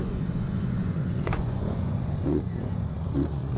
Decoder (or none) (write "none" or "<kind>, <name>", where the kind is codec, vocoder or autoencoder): vocoder, Vocos